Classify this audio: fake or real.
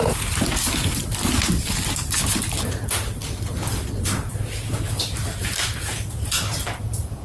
real